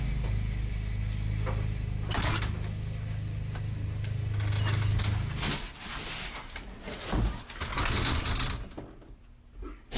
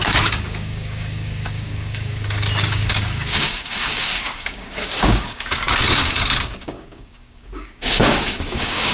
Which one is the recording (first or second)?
first